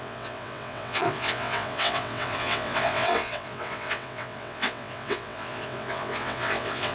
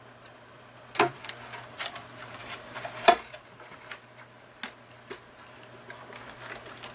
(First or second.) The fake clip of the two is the first